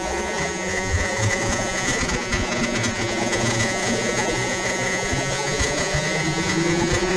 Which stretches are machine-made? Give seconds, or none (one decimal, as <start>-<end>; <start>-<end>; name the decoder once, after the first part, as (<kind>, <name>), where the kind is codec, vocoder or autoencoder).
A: 0.0-7.2 (vocoder, Vocos)